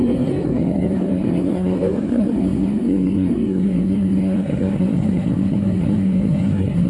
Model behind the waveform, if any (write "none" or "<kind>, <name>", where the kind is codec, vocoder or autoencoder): codec, SNAC